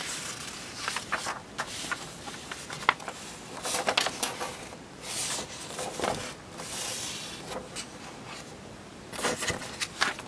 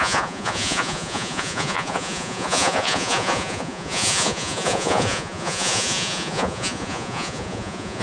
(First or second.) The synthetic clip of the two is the second